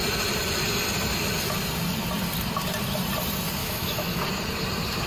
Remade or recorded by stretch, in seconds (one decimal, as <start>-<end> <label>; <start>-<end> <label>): 0.0-3.6 recorded; 3.6-4.2 remade; 4.2-5.1 recorded